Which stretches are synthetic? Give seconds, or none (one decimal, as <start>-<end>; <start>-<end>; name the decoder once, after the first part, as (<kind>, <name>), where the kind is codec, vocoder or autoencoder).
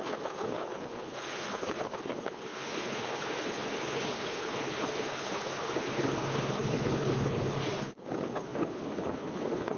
0.0-9.8 (codec, HILCodec)